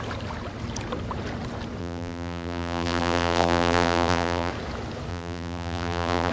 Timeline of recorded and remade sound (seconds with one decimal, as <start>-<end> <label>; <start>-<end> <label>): 0.0-1.8 recorded; 1.8-4.5 remade; 4.5-5.1 recorded; 5.1-6.3 remade